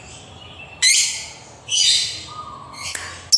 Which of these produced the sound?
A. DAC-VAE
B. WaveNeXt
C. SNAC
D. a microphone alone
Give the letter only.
D